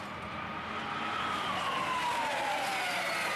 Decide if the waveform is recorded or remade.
recorded